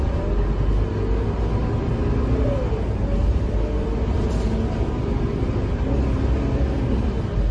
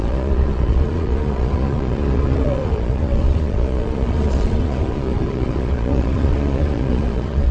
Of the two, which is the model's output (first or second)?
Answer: second